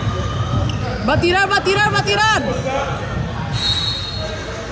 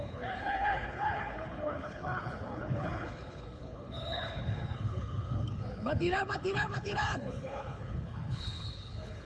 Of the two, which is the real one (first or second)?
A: first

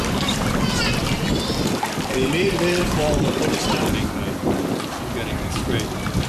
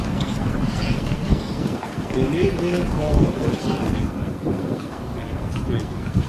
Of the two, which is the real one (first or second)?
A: first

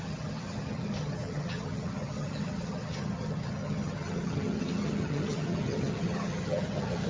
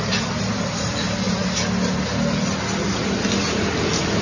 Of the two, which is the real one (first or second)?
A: second